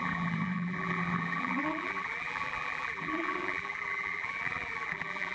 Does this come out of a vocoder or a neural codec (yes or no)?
yes